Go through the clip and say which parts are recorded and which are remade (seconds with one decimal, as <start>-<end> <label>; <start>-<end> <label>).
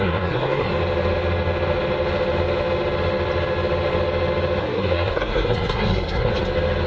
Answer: 0.0-0.7 remade; 0.7-4.6 recorded; 4.6-6.3 remade; 6.3-6.9 recorded